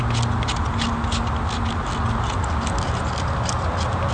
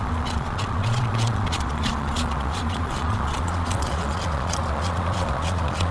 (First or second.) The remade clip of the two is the second